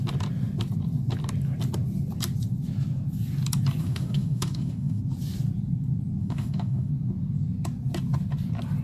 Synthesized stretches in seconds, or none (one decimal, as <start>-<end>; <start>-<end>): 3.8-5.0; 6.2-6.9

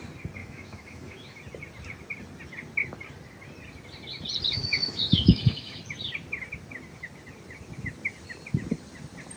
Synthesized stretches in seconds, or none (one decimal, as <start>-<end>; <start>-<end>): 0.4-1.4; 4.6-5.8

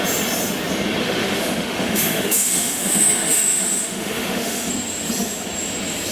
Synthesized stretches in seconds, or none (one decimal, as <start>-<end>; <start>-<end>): 1.0-4.7